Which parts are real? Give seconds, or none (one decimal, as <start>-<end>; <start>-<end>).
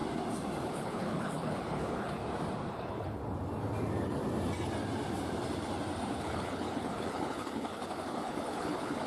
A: 0.0-0.6; 2.2-2.7; 3.2-6.2